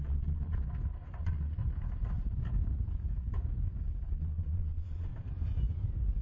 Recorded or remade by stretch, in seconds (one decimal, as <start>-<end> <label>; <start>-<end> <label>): 0.0-0.7 remade; 0.7-1.2 recorded; 1.2-1.6 remade; 1.6-4.1 recorded; 4.1-5.1 remade; 5.1-6.2 recorded